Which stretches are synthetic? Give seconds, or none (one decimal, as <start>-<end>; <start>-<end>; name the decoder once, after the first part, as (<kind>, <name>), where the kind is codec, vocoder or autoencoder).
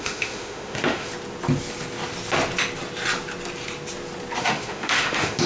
0.0-1.1 (autoencoder, DAC-VAE); 4.4-5.5